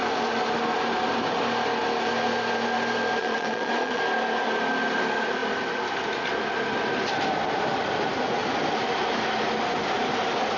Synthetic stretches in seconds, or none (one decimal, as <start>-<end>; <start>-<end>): 3.2-4.0